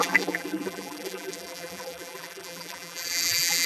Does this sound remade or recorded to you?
remade